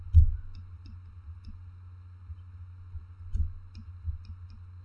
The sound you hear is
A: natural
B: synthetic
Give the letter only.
A